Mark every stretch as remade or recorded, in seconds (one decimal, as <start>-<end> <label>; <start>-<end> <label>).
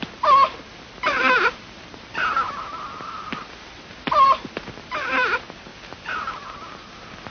0.0-7.3 remade